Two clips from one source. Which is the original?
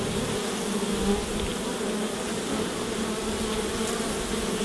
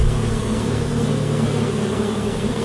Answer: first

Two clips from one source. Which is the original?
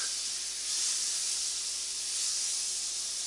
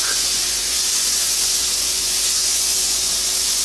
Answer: first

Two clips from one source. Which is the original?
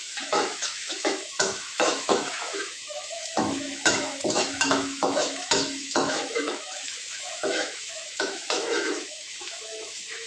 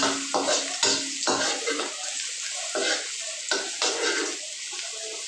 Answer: second